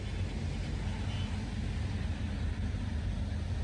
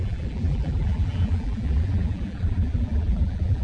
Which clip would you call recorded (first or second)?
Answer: first